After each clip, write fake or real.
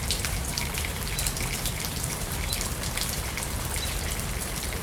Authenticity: fake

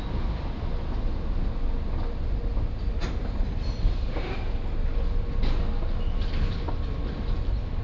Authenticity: real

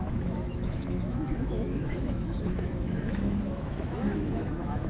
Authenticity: fake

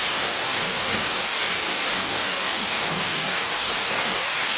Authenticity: fake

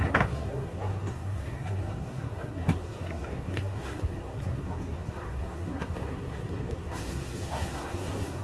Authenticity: fake